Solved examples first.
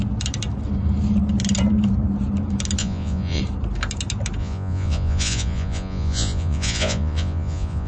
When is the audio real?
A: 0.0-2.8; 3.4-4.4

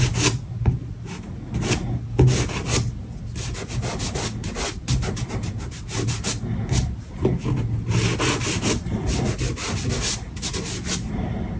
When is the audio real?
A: 0.0-11.6

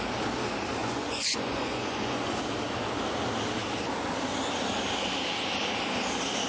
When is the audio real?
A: 0.0-0.8; 2.4-6.5